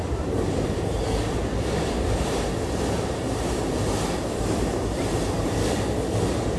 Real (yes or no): no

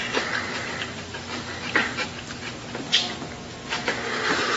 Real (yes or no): yes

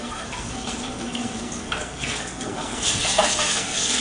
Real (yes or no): no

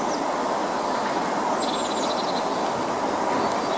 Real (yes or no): yes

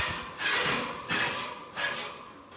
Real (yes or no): yes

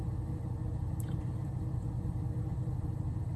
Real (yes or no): no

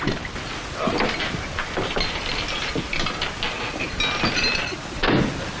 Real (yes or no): yes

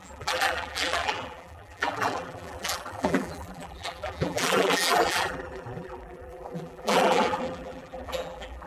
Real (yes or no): no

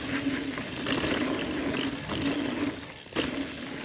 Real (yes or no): yes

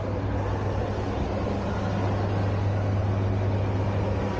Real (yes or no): yes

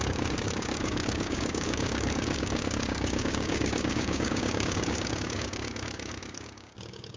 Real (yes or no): no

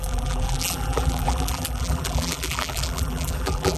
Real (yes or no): no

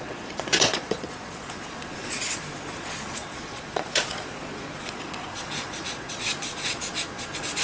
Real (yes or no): no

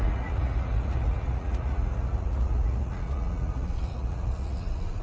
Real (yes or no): no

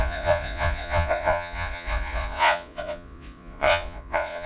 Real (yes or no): no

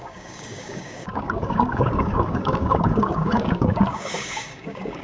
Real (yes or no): no